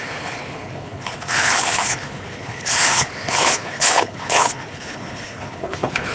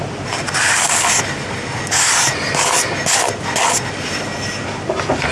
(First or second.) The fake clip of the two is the first